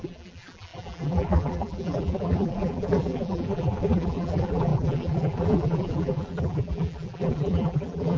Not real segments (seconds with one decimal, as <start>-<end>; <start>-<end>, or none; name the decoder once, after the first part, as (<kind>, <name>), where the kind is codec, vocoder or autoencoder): 0.0-8.2 (vocoder, BigVGAN v2)